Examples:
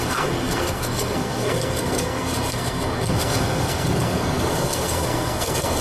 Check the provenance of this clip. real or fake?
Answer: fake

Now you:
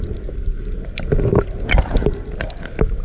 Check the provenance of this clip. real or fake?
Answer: real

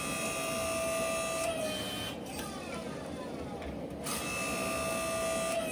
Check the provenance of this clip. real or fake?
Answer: real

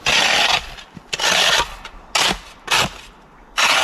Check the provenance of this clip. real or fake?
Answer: real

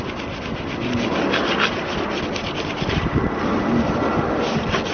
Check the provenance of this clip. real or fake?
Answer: real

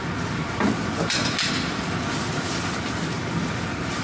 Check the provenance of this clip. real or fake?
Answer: real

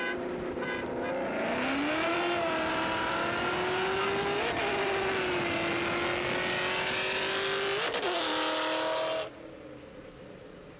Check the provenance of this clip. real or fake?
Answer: real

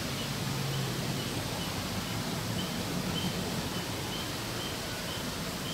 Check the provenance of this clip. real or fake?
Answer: real